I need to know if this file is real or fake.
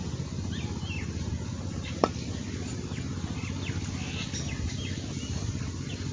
real